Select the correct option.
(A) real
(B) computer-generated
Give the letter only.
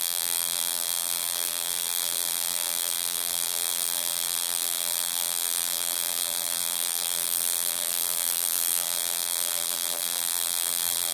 B